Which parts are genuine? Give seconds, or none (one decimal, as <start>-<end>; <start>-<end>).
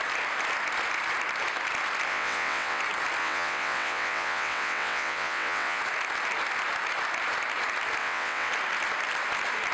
0.0-2.1; 2.8-3.2; 5.8-8.0; 8.5-9.7